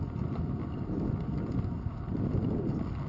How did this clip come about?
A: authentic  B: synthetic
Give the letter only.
A